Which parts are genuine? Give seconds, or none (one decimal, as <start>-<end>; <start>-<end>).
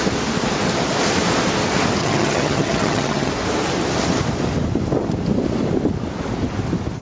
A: 0.0-2.0; 3.3-7.0